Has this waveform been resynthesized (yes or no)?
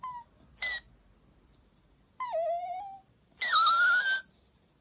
no